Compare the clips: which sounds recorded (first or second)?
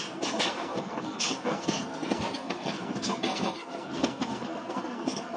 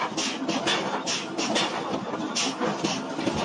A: second